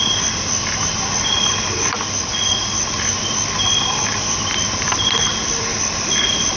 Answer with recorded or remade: remade